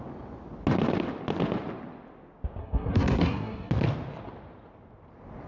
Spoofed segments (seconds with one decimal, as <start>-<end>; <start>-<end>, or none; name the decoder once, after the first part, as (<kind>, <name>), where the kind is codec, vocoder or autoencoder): 2.6-3.7 (codec, SNAC)